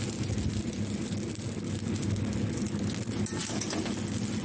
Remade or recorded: recorded